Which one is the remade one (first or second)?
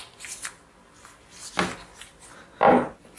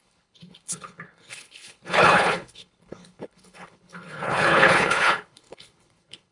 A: second